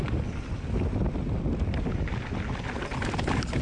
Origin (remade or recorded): recorded